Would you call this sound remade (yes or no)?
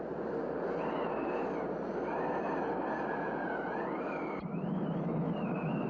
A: no